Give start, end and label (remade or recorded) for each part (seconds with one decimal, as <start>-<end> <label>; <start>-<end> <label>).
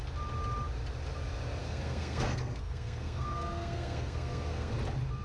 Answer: 0.0-1.6 recorded; 1.6-4.7 remade; 4.7-5.2 recorded